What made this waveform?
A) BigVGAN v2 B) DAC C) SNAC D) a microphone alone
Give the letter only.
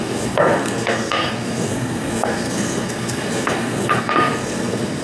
C